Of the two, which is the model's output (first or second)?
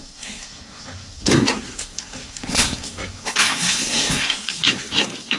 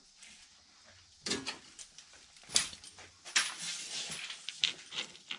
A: first